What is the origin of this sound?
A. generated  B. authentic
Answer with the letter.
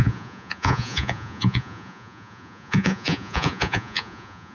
A